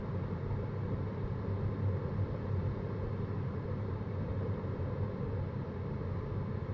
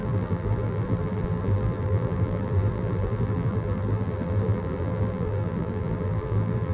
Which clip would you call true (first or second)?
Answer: first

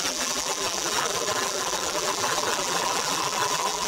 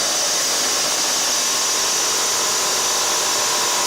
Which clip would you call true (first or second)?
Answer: second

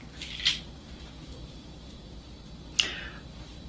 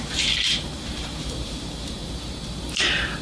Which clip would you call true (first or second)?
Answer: first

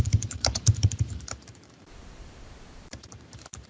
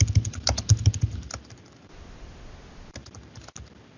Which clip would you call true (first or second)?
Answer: second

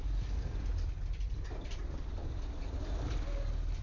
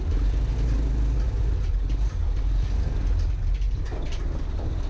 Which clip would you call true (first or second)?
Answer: second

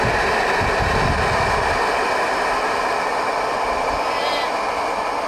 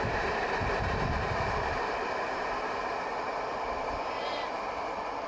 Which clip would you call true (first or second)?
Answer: first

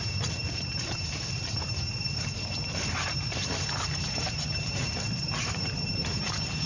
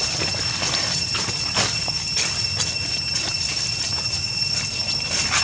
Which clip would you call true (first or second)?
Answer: second